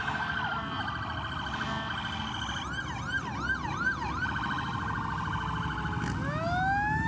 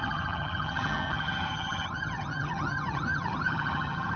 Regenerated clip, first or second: second